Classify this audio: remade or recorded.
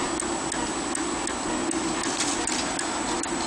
recorded